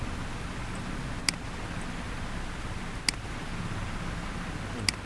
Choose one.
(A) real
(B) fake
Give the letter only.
A